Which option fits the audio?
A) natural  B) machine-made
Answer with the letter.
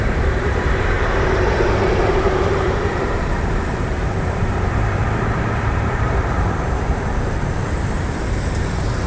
B